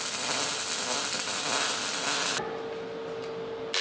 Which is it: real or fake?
real